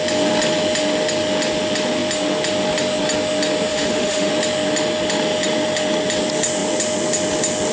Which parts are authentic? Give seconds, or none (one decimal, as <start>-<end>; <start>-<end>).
0.0-3.7; 4.3-7.7